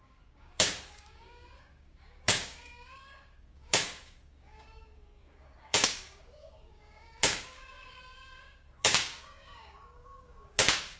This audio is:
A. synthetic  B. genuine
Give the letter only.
A